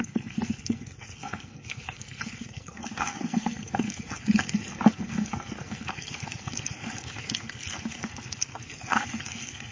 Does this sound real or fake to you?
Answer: fake